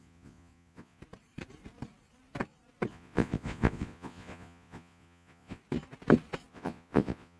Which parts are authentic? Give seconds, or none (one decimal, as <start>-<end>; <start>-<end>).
1.0-2.9; 5.6-6.5